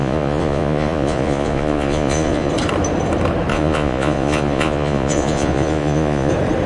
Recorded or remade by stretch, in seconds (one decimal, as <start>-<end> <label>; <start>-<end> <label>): 0.0-2.5 remade; 2.5-3.5 recorded; 3.5-6.3 remade; 6.3-6.7 recorded